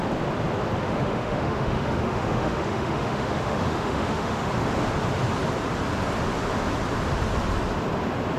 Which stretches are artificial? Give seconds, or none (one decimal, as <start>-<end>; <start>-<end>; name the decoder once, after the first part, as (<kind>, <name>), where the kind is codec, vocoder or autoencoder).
0.8-4.5 (autoencoder, DAC-VAE)